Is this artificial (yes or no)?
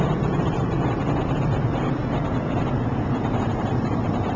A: no